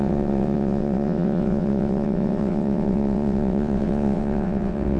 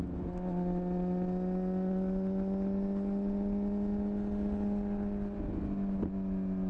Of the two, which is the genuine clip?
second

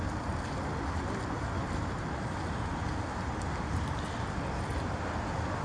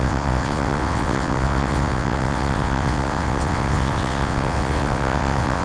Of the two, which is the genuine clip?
first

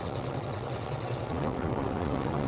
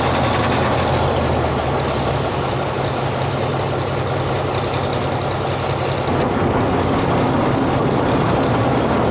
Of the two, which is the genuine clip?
second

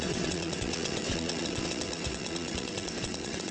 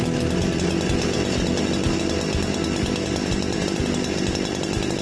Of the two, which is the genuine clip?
second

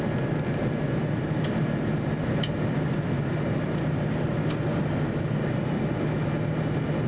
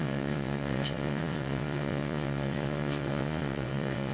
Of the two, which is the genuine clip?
first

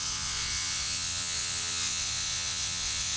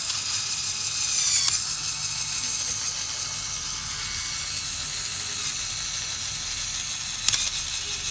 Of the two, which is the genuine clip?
second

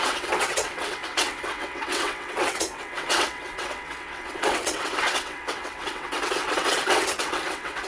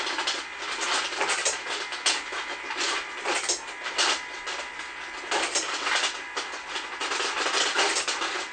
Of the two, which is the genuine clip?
second